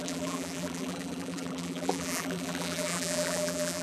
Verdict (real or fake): fake